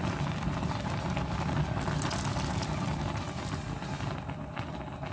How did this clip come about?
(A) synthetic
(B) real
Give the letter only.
B